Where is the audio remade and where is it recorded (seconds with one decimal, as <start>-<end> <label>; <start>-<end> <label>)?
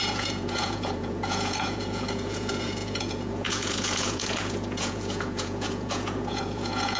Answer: 0.0-7.0 remade